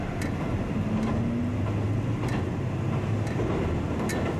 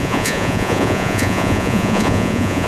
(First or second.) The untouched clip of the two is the first